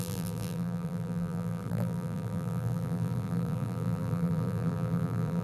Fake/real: fake